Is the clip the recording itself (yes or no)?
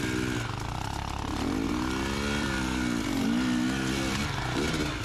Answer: yes